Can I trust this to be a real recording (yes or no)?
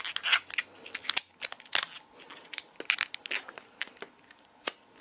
yes